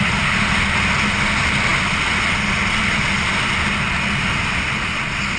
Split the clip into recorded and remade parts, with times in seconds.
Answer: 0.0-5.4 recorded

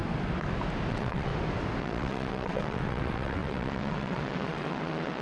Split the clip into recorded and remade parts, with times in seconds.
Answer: 0.0-0.9 recorded; 0.9-1.3 remade; 1.3-1.8 recorded; 1.8-5.2 remade

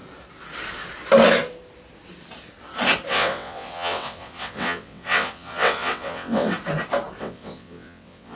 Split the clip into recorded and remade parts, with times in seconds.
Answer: 0.0-3.1 recorded; 3.1-6.5 remade; 6.5-7.2 recorded; 7.2-8.4 remade

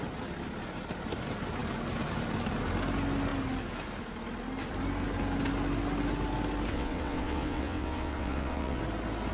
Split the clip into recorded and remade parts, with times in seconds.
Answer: 0.0-6.7 recorded; 6.7-8.8 remade; 8.8-9.3 recorded

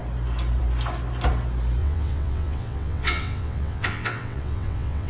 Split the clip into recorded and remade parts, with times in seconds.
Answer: 0.0-1.8 recorded; 1.8-5.1 remade

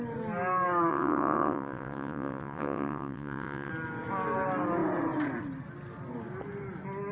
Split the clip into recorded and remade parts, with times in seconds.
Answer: 0.0-0.9 recorded; 0.9-3.7 remade; 3.7-7.1 recorded

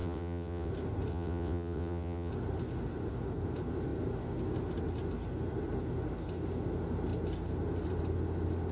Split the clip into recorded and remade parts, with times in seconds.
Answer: 0.0-0.7 remade; 0.7-1.1 recorded; 1.1-2.3 remade; 2.3-8.7 recorded